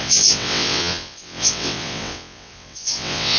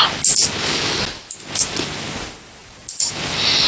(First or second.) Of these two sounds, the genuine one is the second